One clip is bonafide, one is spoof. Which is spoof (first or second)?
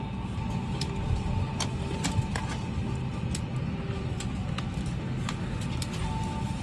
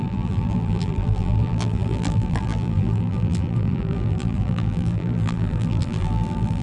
second